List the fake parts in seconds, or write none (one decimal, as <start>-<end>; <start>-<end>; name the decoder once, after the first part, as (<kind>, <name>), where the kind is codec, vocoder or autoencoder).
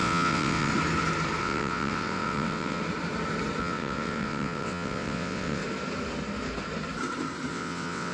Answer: 0.0-0.7 (vocoder, WaveNeXt); 1.4-2.8; 3.6-5.6; 7.5-8.1